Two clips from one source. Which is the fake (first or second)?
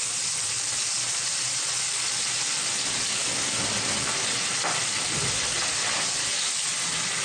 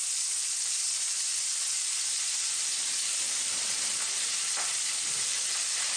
second